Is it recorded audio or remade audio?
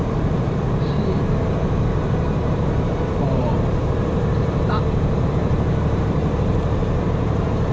remade